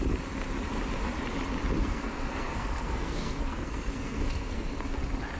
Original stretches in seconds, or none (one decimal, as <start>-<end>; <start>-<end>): 0.0-1.8; 5.0-5.4